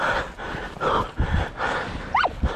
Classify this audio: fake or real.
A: real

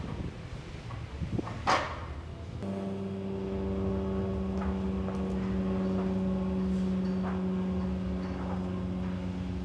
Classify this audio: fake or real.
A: real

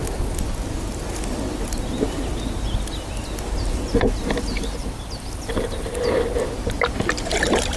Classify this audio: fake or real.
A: real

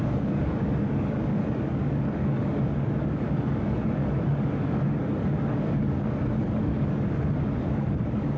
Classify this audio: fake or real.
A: fake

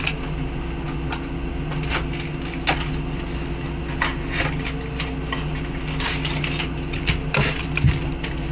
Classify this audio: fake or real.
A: real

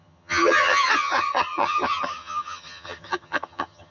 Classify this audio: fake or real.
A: fake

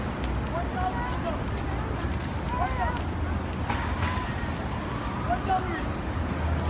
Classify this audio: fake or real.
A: real